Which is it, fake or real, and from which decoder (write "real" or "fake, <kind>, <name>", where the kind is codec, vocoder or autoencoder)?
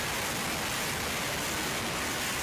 real